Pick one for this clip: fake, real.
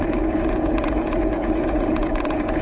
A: fake